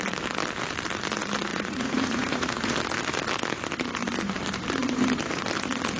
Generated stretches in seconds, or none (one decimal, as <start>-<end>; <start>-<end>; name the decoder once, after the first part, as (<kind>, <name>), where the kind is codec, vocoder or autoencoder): 1.5-2.7 (vocoder, Vocos)